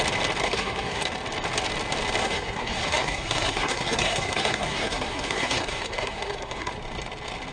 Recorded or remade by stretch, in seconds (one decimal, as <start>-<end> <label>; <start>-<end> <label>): 0.0-0.4 recorded; 0.4-1.0 remade; 1.0-2.2 recorded; 2.2-6.7 remade; 6.7-7.5 recorded